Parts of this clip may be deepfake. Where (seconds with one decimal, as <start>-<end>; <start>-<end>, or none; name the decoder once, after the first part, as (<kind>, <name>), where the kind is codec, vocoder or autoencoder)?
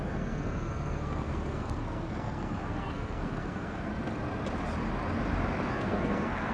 0.0-3.9 (codec, SNAC); 5.7-6.5